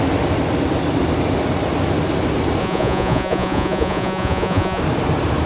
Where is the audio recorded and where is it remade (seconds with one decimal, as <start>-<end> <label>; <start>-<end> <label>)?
0.0-2.6 recorded; 2.6-4.8 remade; 4.8-5.5 recorded